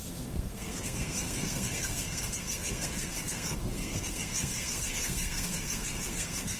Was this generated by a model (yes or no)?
yes